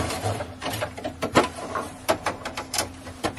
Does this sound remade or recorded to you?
remade